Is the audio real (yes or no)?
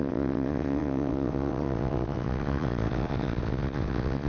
no